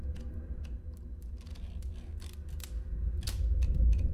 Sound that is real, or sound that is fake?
real